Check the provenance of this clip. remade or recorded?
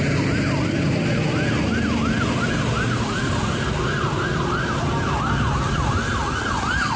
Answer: recorded